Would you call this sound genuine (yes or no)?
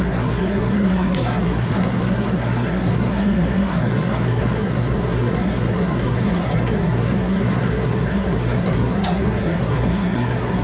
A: no